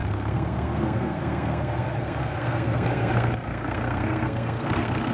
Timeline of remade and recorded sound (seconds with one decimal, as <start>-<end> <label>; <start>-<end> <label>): 0.0-5.1 remade

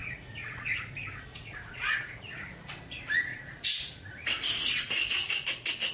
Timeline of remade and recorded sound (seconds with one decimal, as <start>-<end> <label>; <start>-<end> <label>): 0.0-0.9 remade; 0.9-1.3 recorded; 1.3-2.6 remade; 2.6-3.3 recorded; 3.3-5.3 remade; 5.3-5.9 recorded

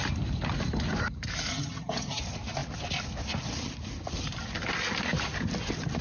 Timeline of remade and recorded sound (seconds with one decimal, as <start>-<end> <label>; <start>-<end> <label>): 0.0-1.5 recorded; 1.5-2.2 remade; 2.2-6.0 recorded

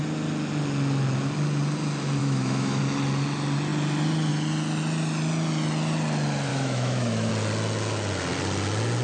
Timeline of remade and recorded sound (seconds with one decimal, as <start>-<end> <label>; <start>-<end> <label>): 0.0-2.2 recorded; 2.2-2.8 remade; 2.8-6.5 recorded; 6.5-7.3 remade; 7.3-9.0 recorded

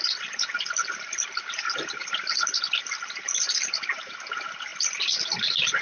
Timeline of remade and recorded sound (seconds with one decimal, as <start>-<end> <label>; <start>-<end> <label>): 0.0-5.8 recorded

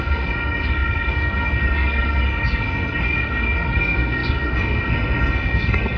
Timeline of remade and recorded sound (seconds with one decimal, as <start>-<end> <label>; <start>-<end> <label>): 0.0-6.0 remade

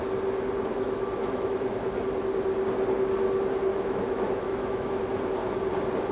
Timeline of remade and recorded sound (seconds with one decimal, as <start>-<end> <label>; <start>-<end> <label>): 0.0-0.7 recorded; 0.7-2.0 remade; 2.0-3.7 recorded; 3.7-5.0 remade; 5.0-6.1 recorded